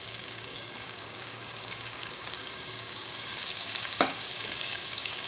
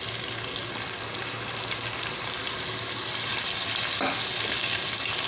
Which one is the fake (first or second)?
first